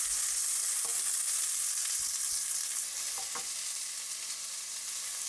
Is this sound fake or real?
real